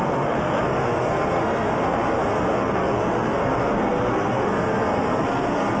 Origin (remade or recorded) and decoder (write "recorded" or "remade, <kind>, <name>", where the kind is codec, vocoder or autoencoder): remade, codec, SNAC